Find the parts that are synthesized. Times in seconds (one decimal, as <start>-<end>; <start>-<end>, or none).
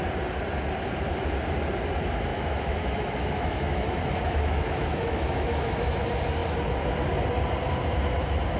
2.3-5.9